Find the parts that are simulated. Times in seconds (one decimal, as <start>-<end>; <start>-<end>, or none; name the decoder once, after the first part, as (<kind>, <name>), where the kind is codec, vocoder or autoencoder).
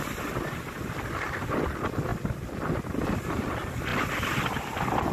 0.0-3.9 (vocoder, BigVGAN v2); 4.4-5.1